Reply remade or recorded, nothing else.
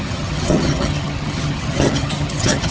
remade